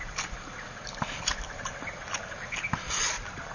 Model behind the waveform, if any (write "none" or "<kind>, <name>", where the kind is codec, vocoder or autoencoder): none